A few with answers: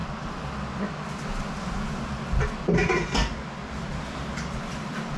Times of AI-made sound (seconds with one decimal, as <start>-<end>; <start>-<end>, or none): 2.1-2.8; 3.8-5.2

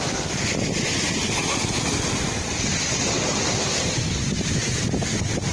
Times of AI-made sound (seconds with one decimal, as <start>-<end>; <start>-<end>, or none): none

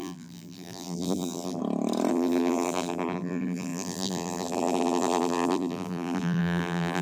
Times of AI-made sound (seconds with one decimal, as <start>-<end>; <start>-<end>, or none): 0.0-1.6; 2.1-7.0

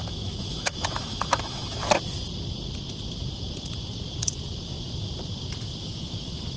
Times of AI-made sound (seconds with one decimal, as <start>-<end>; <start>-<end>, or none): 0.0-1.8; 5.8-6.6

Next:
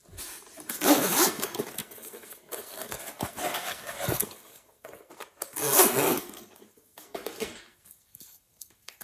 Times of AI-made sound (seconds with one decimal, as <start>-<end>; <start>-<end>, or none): 0.7-9.0

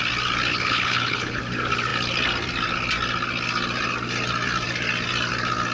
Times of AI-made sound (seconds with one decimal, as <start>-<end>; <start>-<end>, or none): 0.5-1.4

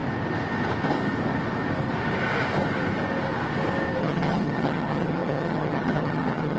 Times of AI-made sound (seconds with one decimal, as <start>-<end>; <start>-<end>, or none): 4.0-6.6

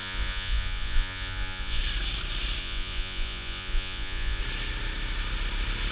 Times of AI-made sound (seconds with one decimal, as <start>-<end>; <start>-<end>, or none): 0.0-1.8; 2.6-4.4